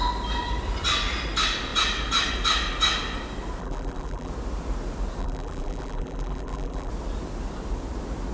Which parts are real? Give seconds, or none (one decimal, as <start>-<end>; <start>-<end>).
0.0-3.6; 4.3-5.2; 6.9-8.3